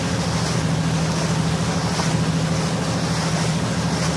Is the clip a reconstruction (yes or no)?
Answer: no